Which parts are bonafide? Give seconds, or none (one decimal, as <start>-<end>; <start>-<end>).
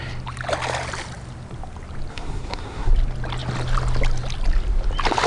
0.0-2.1; 2.9-5.3